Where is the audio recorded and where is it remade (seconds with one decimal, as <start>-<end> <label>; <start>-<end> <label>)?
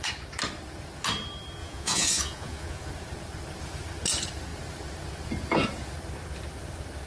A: 0.0-1.6 recorded; 1.6-2.9 remade; 2.9-7.1 recorded